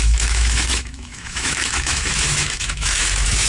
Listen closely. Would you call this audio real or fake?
fake